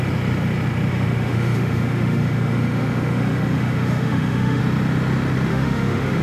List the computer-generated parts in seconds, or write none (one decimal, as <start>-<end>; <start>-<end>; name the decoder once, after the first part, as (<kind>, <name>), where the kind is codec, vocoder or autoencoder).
0.9-4.6 (autoencoder, DAC-VAE); 5.5-6.2